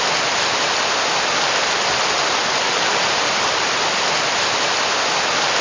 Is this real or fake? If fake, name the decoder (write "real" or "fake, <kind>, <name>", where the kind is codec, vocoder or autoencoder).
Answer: real